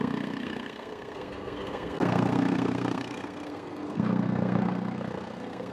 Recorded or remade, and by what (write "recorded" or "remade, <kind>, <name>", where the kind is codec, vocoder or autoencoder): remade, codec, SNAC